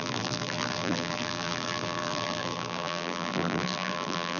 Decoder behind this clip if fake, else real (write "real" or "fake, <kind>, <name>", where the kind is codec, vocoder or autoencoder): fake, vocoder, BigVGAN v2